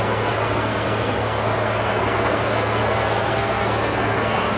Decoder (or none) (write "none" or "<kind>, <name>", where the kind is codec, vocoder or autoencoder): codec, SNAC